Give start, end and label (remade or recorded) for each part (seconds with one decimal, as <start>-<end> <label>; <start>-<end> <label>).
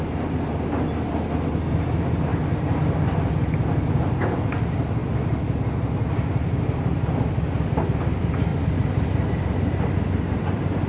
0.0-8.5 recorded; 8.5-9.3 remade; 9.3-10.9 recorded